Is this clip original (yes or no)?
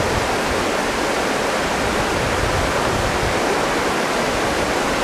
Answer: yes